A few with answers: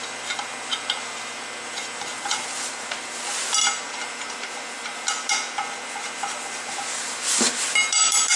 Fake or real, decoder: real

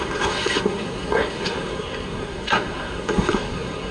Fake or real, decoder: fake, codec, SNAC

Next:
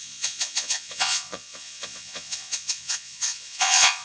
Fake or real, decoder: fake, vocoder, Vocos